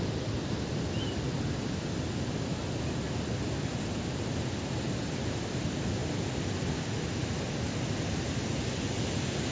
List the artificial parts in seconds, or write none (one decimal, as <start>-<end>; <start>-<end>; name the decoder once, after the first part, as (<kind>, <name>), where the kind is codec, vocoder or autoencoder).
3.7-5.6 (vocoder, BigVGAN v2)

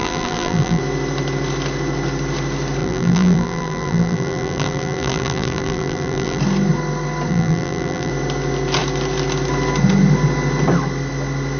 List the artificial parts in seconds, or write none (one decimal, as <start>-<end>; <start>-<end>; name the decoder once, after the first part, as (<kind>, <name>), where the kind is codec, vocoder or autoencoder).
0.0-0.8 (vocoder, BigVGAN v2); 2.8-6.4; 7.3-8.1

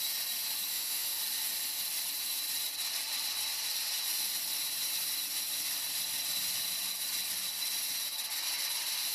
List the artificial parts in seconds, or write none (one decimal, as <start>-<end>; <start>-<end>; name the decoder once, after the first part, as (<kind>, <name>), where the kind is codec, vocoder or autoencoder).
0.7-1.2 (autoencoder, DAC-VAE)

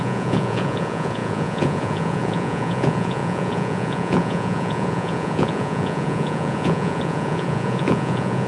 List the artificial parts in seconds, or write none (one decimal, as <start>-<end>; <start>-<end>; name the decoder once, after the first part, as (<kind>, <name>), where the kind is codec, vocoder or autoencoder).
0.0-8.5 (vocoder, Vocos)